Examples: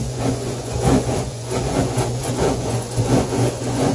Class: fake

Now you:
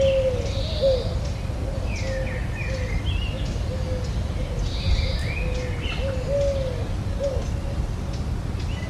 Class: real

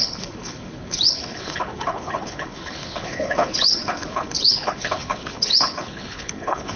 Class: fake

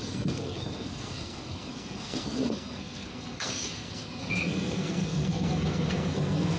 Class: fake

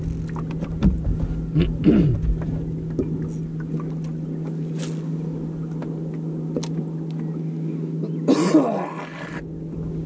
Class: real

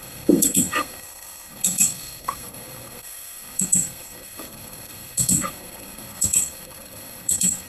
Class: fake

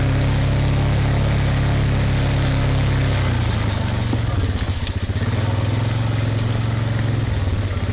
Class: real